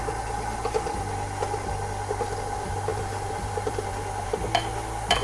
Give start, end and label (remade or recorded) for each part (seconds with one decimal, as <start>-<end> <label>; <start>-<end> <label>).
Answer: 0.0-2.9 recorded; 2.9-3.9 remade; 3.9-5.2 recorded